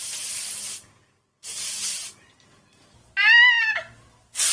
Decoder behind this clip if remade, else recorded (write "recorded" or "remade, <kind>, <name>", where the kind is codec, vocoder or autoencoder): recorded